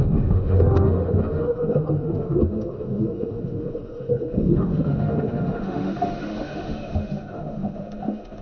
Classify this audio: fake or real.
fake